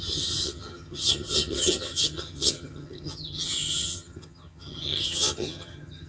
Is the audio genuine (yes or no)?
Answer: no